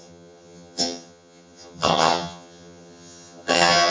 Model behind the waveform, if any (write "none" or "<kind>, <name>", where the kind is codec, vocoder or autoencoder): vocoder, HiFi-GAN